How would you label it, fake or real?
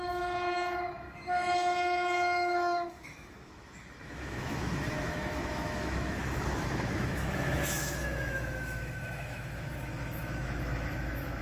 fake